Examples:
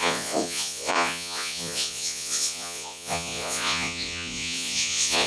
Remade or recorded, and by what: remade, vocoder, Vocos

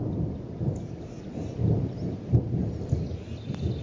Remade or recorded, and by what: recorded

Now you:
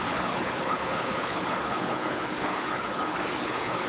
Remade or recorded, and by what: remade, codec, HILCodec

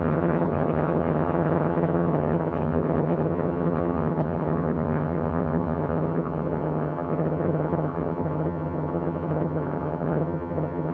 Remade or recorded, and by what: remade, vocoder, HiFi-GAN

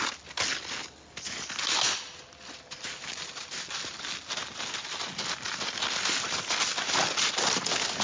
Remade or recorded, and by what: recorded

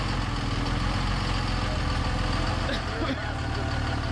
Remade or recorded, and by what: recorded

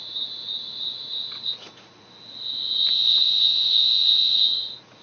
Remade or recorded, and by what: remade, vocoder, Vocos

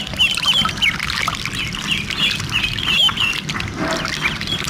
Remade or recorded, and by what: recorded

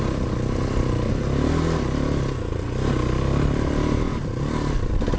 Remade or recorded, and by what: recorded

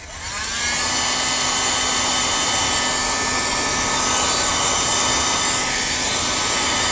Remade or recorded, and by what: recorded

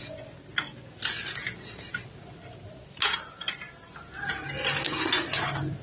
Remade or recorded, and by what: recorded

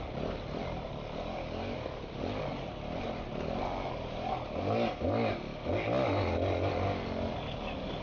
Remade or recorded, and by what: recorded